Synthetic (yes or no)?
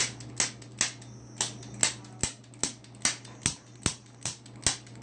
no